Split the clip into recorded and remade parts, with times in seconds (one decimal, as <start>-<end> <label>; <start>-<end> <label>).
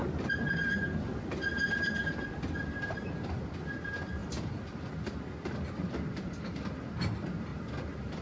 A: 0.0-2.1 remade; 2.1-4.2 recorded; 4.2-4.9 remade; 4.9-7.5 recorded; 7.5-8.2 remade